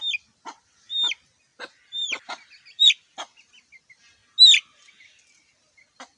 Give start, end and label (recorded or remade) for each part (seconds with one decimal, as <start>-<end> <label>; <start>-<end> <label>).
0.0-1.5 recorded; 1.5-3.8 remade; 3.8-6.2 recorded